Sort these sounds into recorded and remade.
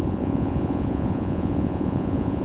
remade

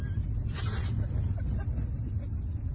recorded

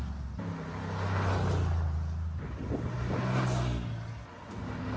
recorded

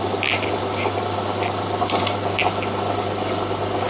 recorded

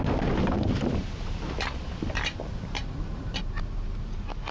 recorded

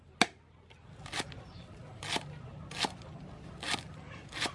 recorded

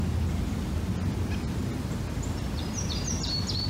recorded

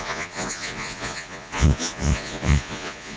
remade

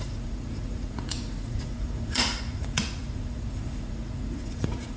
remade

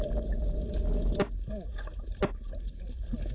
recorded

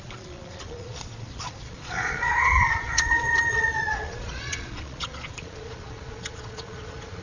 remade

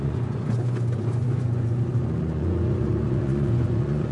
remade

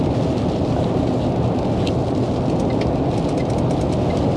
recorded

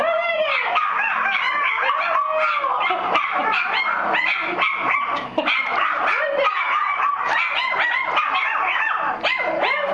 recorded